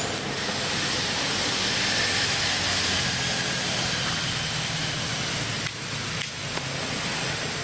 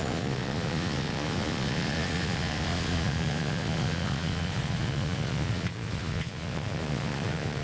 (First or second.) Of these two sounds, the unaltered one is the first